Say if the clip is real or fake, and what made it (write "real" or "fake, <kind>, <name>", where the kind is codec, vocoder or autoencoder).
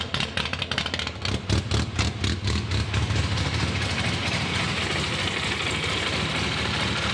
real